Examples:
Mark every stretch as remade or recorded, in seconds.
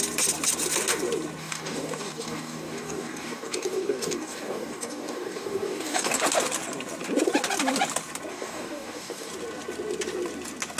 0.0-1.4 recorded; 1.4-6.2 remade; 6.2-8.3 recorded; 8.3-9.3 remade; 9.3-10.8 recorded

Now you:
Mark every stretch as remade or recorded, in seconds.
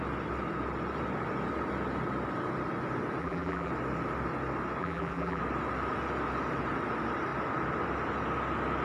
0.0-3.2 recorded; 3.2-3.7 remade; 3.7-4.8 recorded; 4.8-5.4 remade; 5.4-8.8 recorded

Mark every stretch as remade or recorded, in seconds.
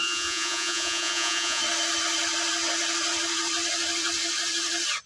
0.0-1.6 remade; 1.6-5.1 recorded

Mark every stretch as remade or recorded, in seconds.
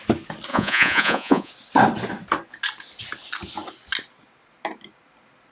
0.0-0.5 recorded; 0.5-1.5 remade; 1.5-5.5 recorded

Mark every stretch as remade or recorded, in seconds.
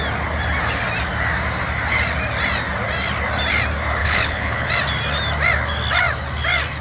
0.0-4.0 recorded; 4.0-4.7 remade; 4.7-6.8 recorded